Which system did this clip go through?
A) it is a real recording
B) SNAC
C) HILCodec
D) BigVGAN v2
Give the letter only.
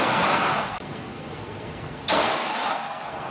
B